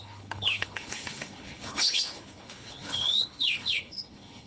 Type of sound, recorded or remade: remade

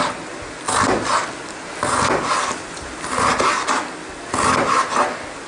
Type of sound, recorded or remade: recorded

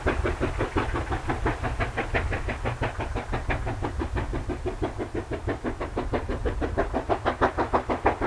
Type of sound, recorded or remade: recorded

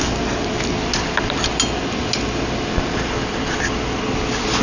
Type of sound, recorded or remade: recorded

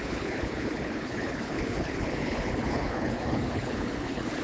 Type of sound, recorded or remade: remade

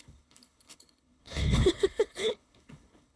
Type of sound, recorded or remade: remade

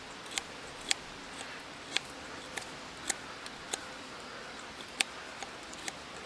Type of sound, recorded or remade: recorded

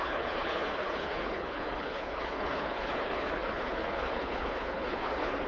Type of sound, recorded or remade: remade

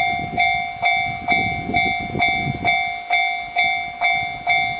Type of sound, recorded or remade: recorded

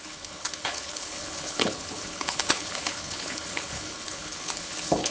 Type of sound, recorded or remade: remade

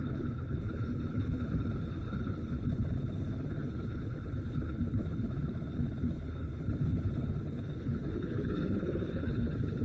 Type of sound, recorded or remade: remade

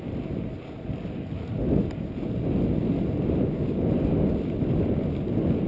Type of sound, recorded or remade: recorded